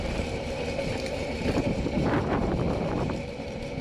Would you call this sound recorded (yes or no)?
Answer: no